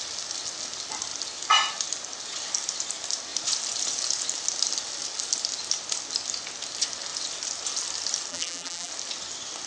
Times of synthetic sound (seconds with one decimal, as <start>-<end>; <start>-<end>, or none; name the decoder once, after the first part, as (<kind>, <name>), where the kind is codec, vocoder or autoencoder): 8.3-8.9 (vocoder, BigVGAN v2)